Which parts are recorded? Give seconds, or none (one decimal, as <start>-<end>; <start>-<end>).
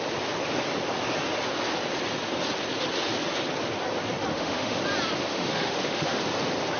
0.0-4.3; 4.8-5.3; 6.2-6.8